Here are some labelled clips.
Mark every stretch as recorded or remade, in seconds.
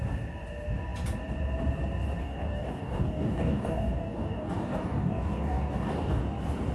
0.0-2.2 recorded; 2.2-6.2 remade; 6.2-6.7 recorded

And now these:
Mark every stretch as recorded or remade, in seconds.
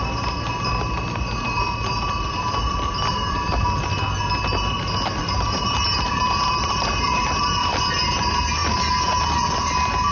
0.0-5.2 recorded; 5.2-7.8 remade; 7.8-10.1 recorded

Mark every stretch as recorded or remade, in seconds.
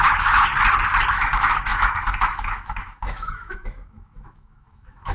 0.0-0.5 remade; 0.5-1.1 recorded; 1.1-5.1 remade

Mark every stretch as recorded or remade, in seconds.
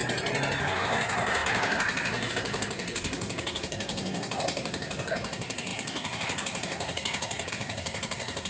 0.0-0.6 recorded; 0.6-8.5 remade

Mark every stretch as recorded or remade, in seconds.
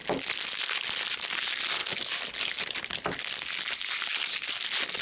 0.0-5.0 recorded